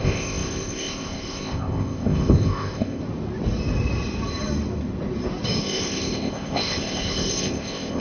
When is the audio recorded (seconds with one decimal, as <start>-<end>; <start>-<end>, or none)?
3.0-5.6